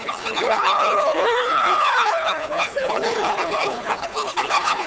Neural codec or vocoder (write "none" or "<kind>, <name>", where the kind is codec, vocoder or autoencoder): codec, HILCodec